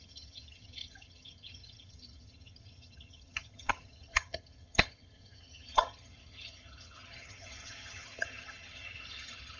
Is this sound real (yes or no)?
no